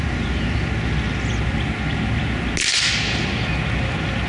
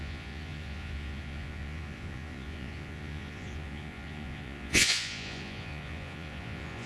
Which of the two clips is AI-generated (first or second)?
second